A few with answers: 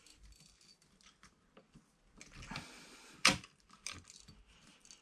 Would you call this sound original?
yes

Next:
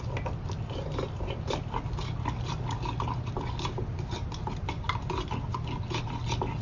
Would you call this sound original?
yes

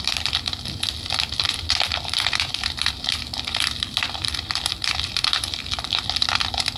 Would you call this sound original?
no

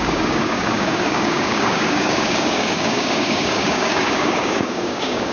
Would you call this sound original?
no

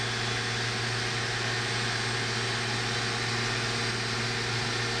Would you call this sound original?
yes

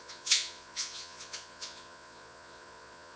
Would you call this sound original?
no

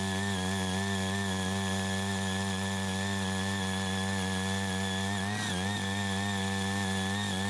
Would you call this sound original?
yes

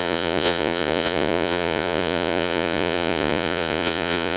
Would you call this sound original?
no